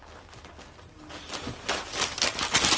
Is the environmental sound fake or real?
real